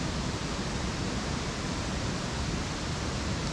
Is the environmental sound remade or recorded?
recorded